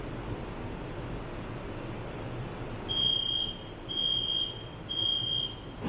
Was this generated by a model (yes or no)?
no